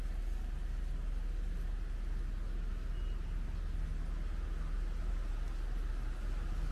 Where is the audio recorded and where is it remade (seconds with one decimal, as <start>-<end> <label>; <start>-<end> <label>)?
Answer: 0.0-6.7 recorded